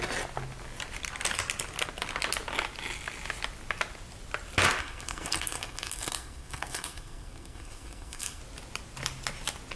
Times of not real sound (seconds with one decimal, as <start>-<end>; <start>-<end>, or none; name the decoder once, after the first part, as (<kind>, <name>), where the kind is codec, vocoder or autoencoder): 4.8-8.4 (codec, SNAC)